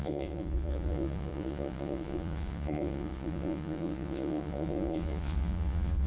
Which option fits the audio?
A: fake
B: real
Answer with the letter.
A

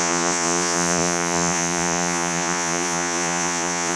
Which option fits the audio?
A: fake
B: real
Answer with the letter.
A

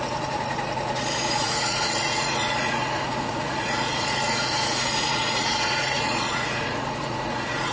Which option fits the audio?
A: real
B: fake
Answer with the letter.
B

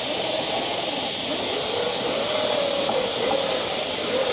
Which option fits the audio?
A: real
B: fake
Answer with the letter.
A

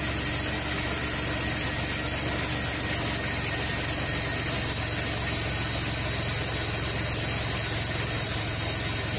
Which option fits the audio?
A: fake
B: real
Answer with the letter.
B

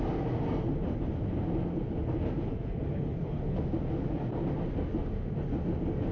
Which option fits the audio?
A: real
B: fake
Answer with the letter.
A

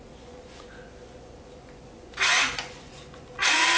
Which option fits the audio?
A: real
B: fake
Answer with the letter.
B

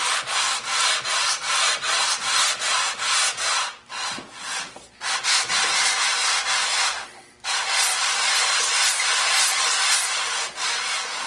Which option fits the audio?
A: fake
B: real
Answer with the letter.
B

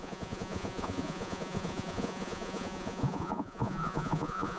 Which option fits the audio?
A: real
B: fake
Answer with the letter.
B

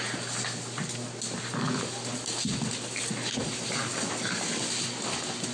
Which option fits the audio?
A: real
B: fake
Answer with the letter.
A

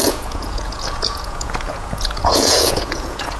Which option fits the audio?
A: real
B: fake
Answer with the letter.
B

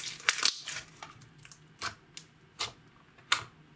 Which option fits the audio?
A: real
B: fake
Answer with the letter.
A